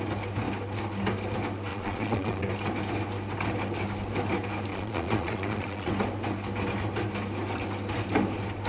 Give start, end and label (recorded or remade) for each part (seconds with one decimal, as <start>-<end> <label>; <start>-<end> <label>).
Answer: 0.0-1.7 recorded; 1.7-2.5 remade; 2.5-4.7 recorded; 4.7-5.9 remade; 5.9-8.7 recorded